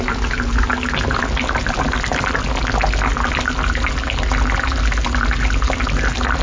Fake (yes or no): no